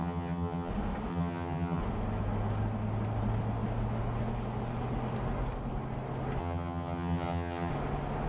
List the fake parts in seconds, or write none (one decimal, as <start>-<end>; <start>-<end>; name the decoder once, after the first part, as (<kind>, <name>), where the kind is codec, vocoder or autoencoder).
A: 0.0-0.7 (vocoder, HiFi-GAN); 1.1-1.8; 6.4-7.7